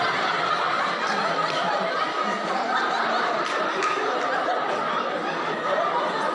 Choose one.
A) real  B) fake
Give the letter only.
A